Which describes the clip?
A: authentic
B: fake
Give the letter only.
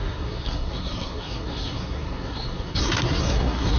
B